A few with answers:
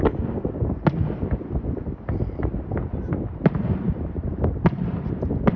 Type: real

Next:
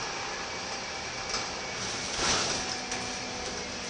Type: fake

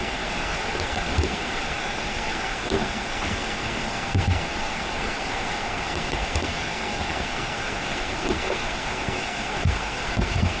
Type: fake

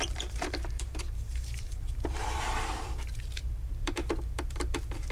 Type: fake